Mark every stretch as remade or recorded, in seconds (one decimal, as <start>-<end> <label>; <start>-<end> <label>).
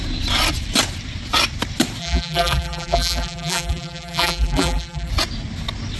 0.0-2.0 recorded; 2.0-5.1 remade; 5.1-6.0 recorded